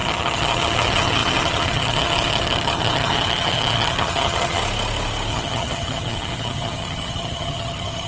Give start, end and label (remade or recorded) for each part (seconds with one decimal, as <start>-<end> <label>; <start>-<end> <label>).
0.0-4.6 remade; 4.6-5.3 recorded; 5.3-8.1 remade